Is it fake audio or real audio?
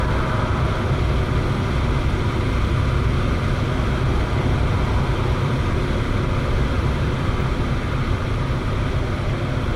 real